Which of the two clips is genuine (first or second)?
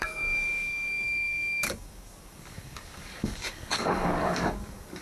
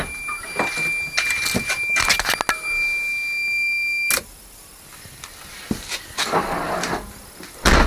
second